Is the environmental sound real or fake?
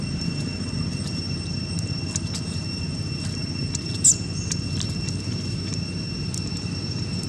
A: real